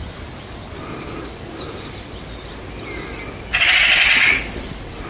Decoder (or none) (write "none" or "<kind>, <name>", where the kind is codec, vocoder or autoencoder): none